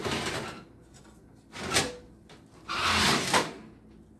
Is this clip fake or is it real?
real